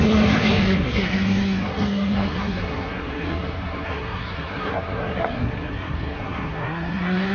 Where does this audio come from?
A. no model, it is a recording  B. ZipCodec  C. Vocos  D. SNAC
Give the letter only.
D